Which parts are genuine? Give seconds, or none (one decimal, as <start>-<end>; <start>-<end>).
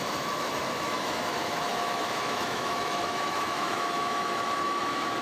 none